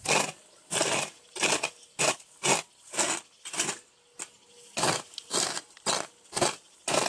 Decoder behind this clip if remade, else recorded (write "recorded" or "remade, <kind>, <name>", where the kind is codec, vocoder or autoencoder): recorded